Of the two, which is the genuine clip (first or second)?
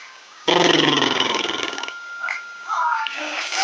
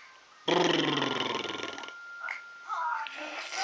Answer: second